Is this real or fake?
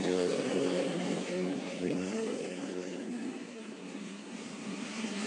fake